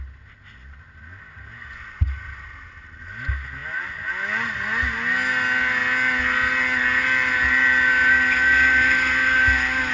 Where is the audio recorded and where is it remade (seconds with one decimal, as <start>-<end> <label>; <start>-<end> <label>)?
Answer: 0.0-9.9 recorded